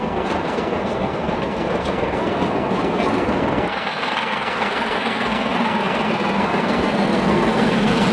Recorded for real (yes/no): no